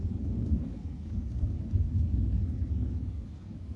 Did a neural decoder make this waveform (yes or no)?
yes